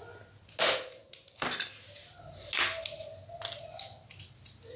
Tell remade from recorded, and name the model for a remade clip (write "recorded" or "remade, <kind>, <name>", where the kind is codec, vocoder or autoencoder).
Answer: recorded